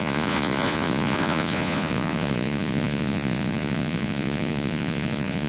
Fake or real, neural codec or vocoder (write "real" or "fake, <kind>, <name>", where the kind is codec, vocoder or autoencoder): fake, vocoder, Vocos